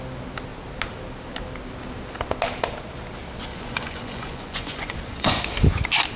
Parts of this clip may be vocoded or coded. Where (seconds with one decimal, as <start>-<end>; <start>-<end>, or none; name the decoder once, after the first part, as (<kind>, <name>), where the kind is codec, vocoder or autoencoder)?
3.5-5.4 (vocoder, Vocos)